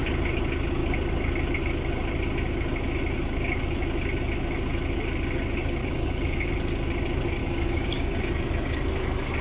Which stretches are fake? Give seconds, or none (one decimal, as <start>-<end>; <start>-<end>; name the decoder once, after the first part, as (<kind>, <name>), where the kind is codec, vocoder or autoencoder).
5.8-6.5 (codec, DAC); 7.4-8.2

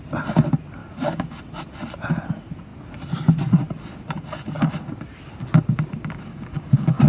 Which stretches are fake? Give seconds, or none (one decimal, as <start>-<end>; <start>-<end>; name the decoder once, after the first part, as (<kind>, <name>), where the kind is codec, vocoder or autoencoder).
0.8-1.4 (codec, DAC); 6.3-7.1